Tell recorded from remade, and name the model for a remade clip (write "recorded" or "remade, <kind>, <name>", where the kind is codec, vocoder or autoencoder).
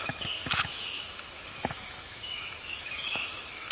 remade, autoencoder, DAC-VAE